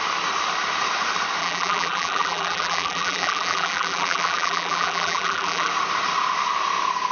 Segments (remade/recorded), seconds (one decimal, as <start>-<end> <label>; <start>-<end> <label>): 0.0-1.4 recorded; 1.4-5.7 remade; 5.7-7.1 recorded